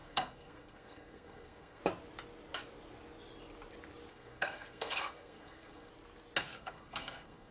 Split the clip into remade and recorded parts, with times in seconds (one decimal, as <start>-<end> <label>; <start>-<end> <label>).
0.0-1.8 remade; 1.8-4.1 recorded; 4.1-5.9 remade; 5.9-6.4 recorded; 6.4-7.5 remade